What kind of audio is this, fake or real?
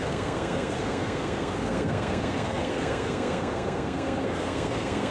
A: fake